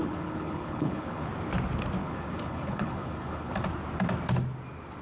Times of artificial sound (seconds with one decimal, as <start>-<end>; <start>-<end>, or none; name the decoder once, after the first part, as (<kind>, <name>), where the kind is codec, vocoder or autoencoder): 0.0-1.3 (codec, HILCodec); 2.0-3.5

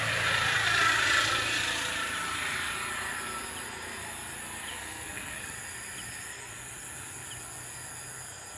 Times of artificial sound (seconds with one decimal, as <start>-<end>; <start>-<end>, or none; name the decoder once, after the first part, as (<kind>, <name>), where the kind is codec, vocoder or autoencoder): 4.7-5.5 (codec, SNAC)

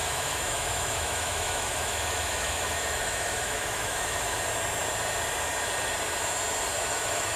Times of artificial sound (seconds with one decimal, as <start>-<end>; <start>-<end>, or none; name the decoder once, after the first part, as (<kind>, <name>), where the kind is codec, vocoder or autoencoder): 0.0-4.4 (autoencoder, DAC-VAE); 6.8-7.4

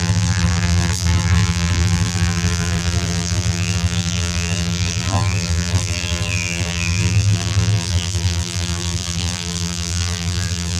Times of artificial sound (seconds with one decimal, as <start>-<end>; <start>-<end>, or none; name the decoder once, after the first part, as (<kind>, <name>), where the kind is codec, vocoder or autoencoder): 0.0-10.8 (vocoder, BigVGAN v2)